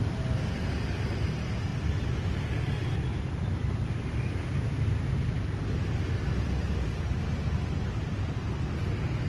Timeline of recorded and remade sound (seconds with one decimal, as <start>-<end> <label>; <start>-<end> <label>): 0.0-9.3 recorded